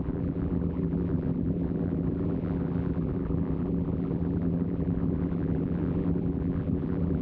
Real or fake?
fake